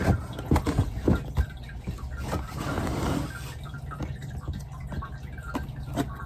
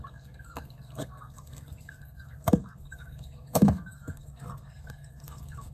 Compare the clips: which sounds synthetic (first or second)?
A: second